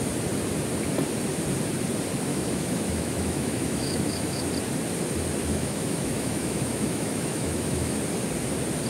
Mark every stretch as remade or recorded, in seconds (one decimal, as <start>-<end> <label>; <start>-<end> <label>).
0.0-2.3 recorded; 2.3-4.5 remade; 4.5-5.5 recorded; 5.5-8.0 remade; 8.0-8.9 recorded